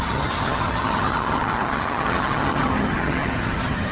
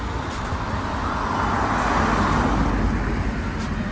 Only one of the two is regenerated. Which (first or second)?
first